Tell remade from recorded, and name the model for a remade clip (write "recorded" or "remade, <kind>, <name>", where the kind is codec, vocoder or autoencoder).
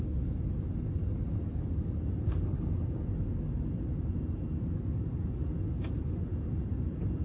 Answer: recorded